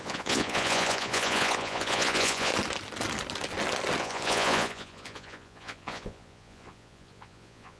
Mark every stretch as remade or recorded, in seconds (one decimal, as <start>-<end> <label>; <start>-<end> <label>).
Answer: 0.0-2.5 remade; 2.5-4.0 recorded; 4.0-7.8 remade